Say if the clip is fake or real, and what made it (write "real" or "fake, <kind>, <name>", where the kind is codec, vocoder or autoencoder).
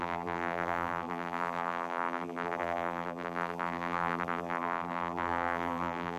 fake, vocoder, BigVGAN v2